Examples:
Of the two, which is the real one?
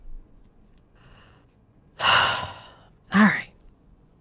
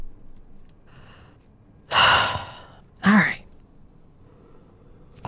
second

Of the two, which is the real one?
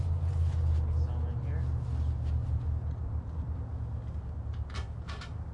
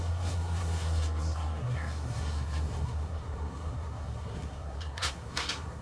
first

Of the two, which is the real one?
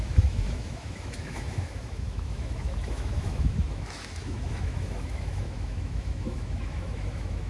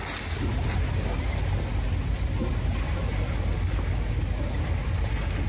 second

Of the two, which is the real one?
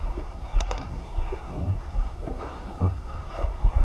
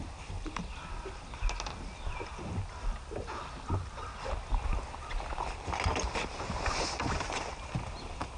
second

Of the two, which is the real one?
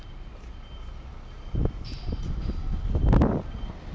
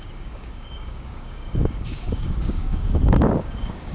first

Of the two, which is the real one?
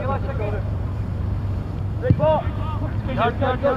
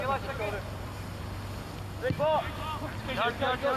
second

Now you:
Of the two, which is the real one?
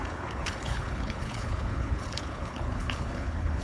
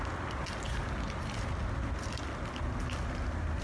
second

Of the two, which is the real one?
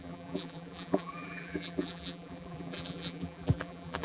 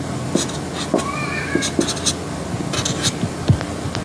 second